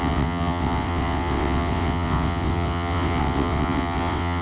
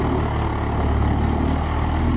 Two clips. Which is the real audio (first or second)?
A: second